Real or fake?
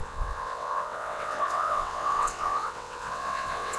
fake